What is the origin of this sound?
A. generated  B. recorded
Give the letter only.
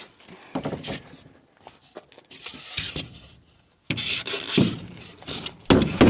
B